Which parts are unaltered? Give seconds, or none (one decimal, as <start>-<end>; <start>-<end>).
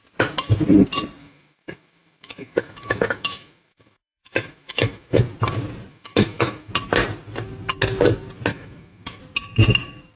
0.0-1.2; 5.2-5.9; 6.7-8.5; 9.2-10.2